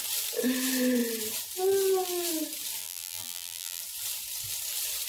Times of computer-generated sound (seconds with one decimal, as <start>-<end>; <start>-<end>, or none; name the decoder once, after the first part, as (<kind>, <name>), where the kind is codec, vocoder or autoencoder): 2.8-3.8 (vocoder, BigVGAN v2)